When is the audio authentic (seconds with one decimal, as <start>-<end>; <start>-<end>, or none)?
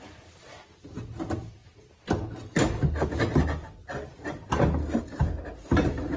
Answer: 0.0-6.2